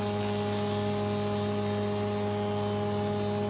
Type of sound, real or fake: real